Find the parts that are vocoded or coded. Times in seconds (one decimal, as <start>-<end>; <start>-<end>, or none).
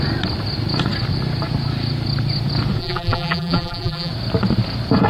2.8-4.1